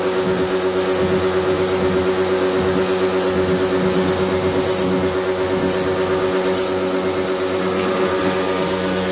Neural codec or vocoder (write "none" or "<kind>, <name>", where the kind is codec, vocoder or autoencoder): none